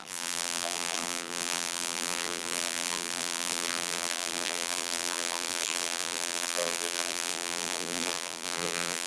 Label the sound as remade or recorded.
remade